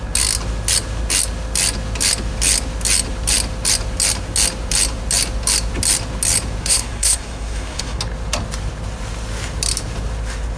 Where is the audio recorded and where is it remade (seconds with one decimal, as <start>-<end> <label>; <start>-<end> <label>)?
0.0-6.6 recorded; 6.6-8.0 remade; 8.0-10.6 recorded